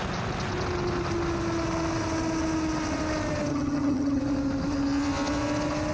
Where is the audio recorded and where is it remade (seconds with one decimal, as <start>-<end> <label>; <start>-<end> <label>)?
0.0-3.5 recorded; 3.5-4.2 remade; 4.2-5.9 recorded